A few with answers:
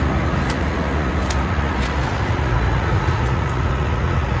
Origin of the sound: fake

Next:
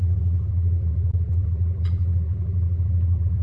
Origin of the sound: fake